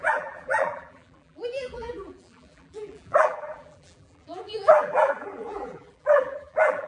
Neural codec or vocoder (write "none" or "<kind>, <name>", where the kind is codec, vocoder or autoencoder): vocoder, BigVGAN v2